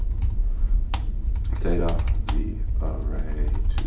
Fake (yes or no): no